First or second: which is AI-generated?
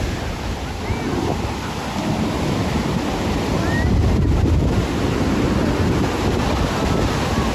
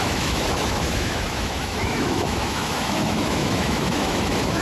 second